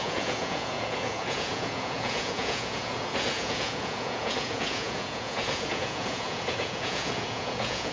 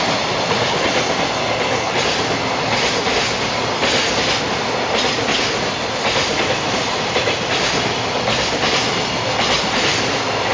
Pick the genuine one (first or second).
second